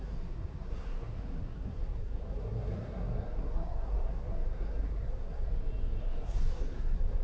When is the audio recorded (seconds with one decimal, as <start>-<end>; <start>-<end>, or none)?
5.5-6.0